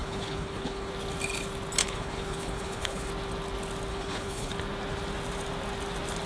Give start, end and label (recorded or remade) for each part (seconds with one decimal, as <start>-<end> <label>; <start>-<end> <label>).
0.0-0.9 remade; 0.9-1.8 recorded; 1.8-3.1 remade; 3.1-3.9 recorded; 3.9-4.5 remade; 4.5-6.3 recorded